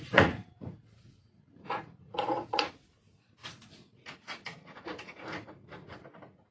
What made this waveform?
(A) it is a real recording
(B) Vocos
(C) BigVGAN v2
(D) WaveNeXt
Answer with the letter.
B